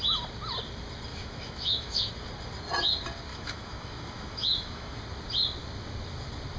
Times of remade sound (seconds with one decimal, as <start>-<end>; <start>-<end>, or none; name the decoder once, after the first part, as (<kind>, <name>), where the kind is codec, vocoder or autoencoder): 1.1-2.1 (autoencoder, DAC-VAE); 3.3-5.0